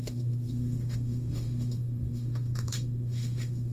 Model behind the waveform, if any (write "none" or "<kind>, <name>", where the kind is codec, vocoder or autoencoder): autoencoder, DAC-VAE